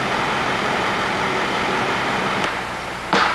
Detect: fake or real real